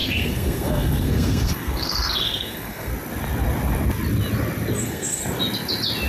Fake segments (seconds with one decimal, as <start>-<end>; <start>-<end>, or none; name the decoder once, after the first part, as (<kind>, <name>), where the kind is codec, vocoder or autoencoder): 0.0-2.9 (codec, SNAC); 4.8-5.2